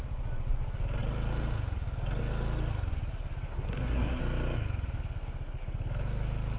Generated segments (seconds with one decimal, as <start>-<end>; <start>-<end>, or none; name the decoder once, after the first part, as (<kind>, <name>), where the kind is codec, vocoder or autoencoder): 3.5-4.2 (codec, SNAC)